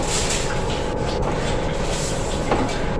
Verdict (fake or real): real